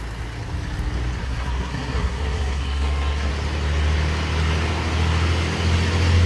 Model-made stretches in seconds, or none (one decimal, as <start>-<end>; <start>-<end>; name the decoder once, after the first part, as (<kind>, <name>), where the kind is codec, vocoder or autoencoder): 1.2-3.3 (codec, SNAC)